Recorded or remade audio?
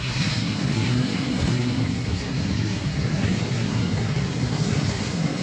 remade